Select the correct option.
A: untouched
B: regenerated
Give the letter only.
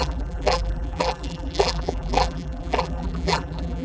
B